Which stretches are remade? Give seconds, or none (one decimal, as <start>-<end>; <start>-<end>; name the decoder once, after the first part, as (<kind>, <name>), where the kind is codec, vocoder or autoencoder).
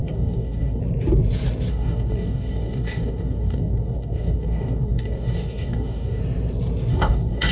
0.0-0.8 (codec, DAC); 1.7-6.2; 6.9-7.5